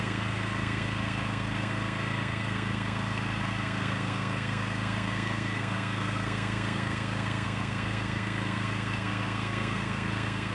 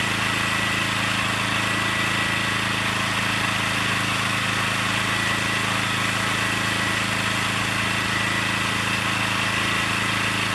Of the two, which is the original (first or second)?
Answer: second